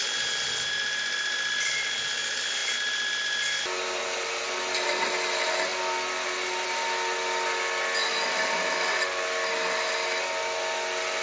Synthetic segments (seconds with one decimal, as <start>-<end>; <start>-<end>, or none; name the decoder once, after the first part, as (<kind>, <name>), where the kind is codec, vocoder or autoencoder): none